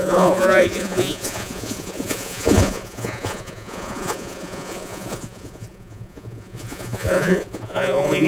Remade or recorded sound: remade